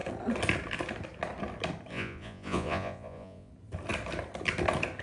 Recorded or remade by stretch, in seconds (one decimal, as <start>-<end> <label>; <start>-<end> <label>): 0.0-1.9 recorded; 1.9-3.5 remade; 3.5-5.0 recorded